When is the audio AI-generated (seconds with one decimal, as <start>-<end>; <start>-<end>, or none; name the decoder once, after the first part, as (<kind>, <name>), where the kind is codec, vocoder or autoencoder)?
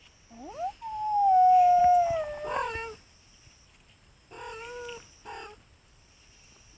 none